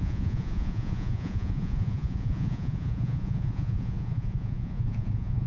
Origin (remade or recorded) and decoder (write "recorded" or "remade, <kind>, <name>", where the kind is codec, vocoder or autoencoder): remade, vocoder, Vocos